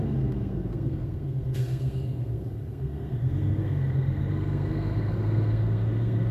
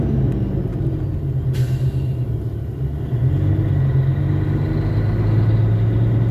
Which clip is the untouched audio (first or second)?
second